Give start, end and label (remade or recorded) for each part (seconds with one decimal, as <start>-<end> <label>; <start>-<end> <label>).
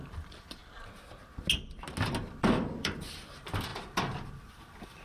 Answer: 0.0-0.6 remade; 0.6-2.4 recorded; 2.4-3.7 remade; 3.7-4.5 recorded; 4.5-5.0 remade